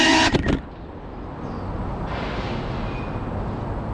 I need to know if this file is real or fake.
real